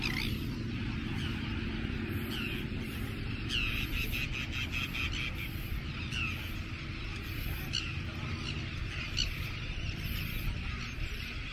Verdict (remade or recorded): recorded